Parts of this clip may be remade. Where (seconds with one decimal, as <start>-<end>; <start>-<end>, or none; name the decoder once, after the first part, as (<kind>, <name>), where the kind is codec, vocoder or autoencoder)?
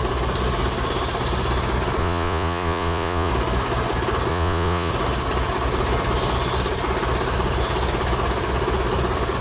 2.0-3.3 (vocoder, Vocos); 4.3-4.9